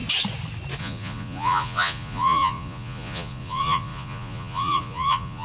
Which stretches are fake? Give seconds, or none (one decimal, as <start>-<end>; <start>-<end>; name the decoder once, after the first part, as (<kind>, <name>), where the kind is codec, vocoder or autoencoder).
0.8-5.4 (vocoder, Vocos)